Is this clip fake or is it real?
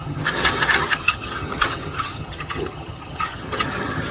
fake